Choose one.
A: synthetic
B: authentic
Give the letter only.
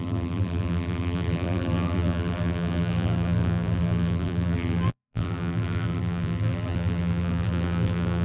A